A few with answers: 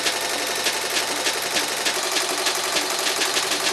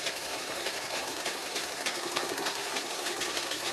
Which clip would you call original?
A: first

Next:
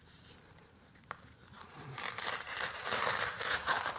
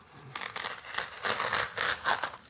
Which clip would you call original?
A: second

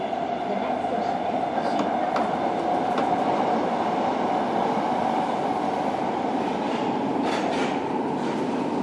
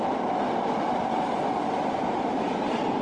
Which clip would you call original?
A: first